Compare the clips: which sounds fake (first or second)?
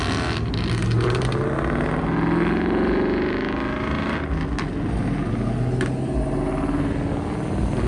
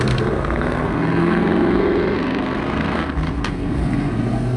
second